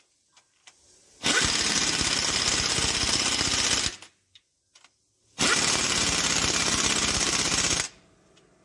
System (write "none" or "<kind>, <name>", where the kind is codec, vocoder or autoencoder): none